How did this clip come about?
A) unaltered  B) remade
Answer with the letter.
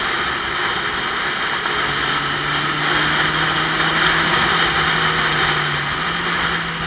A